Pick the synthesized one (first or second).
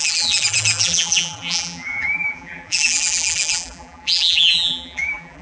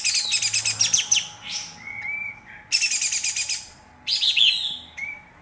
first